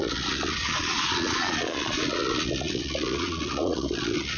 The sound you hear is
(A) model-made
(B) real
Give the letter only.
A